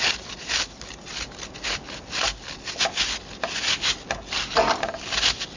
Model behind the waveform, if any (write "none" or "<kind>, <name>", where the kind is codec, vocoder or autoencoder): none